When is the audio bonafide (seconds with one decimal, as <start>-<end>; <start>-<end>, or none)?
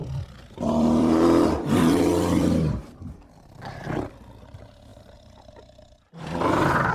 3.6-4.9